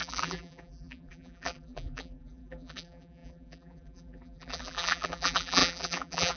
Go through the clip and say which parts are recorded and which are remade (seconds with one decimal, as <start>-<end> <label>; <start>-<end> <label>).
0.0-6.4 remade